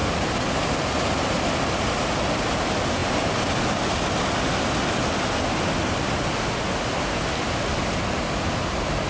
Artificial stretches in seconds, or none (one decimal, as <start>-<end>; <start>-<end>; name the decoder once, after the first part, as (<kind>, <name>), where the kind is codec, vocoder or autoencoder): none